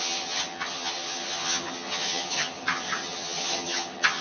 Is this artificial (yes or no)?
yes